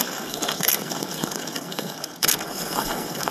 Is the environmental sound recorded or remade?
remade